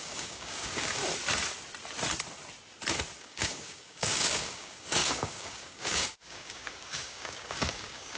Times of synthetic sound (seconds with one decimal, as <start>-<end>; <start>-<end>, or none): 0.0-1.0; 3.2-8.2

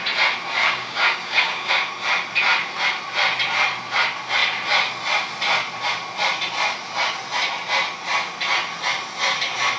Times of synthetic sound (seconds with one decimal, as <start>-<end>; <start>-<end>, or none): 0.6-1.7

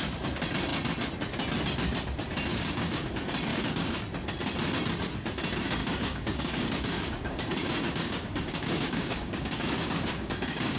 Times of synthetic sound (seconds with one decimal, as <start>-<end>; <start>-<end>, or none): 2.5-3.1; 3.5-4.0; 5.8-10.8

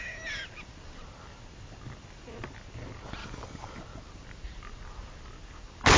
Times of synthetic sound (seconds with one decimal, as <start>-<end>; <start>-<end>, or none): 3.2-3.8

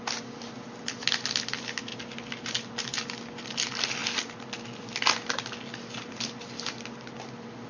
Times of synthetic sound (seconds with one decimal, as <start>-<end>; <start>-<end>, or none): none

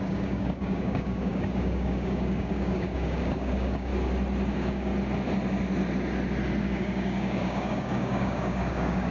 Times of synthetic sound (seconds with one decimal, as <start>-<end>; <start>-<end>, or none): 0.0-3.9; 4.5-4.9; 6.6-9.1

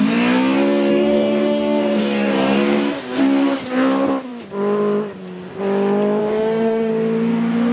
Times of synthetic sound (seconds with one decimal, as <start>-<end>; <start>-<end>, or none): 0.9-3.2; 6.2-6.9

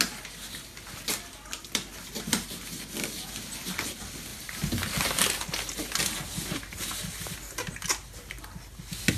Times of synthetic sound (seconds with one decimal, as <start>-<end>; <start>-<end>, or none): none